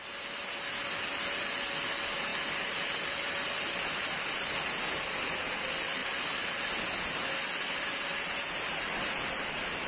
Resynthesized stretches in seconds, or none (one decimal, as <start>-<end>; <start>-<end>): none